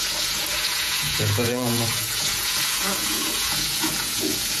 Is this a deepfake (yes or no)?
yes